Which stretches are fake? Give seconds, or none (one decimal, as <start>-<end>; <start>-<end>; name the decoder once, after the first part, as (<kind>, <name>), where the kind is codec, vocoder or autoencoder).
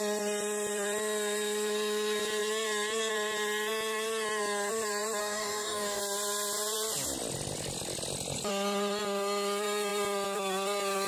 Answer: 5.2-6.0 (codec, DAC)